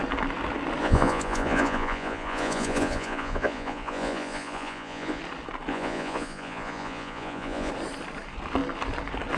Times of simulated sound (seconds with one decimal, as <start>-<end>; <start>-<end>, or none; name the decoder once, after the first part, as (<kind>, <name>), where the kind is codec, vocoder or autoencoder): 0.8-5.2 (vocoder, Vocos); 5.7-7.7

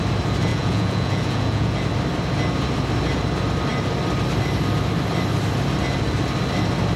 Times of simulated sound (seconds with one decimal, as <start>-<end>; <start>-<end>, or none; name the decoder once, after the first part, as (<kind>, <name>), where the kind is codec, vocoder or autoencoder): 0.5-1.8 (vocoder, Vocos)

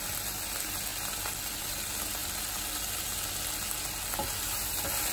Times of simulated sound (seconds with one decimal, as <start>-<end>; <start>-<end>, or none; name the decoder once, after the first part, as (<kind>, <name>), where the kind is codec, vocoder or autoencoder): none

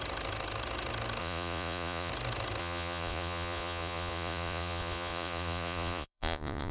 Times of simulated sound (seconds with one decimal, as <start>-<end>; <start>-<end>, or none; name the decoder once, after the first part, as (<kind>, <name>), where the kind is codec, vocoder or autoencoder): 1.2-2.1 (vocoder, Vocos); 2.6-6.7

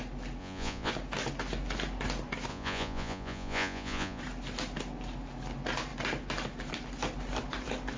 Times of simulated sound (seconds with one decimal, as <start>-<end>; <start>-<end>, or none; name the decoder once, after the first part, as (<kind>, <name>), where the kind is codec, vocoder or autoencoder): 0.4-0.9 (vocoder, Vocos); 2.5-4.2

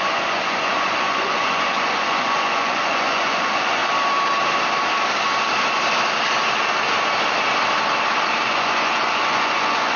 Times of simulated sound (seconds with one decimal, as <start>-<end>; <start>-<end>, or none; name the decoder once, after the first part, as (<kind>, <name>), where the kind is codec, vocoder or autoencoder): 0.0-3.8 (vocoder, Vocos); 8.5-10.0

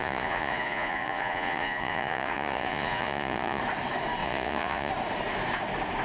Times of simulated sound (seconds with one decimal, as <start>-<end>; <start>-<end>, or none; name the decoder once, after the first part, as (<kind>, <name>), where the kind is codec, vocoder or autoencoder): 0.0-3.6 (vocoder, Vocos); 4.2-4.9